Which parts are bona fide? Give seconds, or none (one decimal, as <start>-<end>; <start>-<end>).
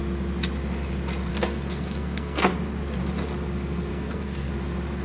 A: 0.0-1.3; 2.5-3.9; 4.5-5.0